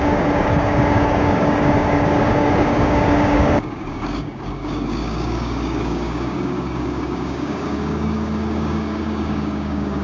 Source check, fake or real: fake